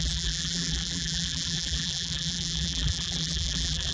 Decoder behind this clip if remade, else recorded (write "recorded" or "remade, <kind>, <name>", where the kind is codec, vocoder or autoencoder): remade, vocoder, BigVGAN v2